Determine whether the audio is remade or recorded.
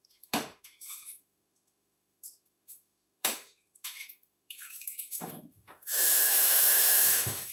remade